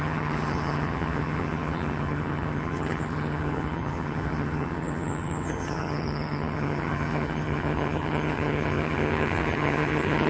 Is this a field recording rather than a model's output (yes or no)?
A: no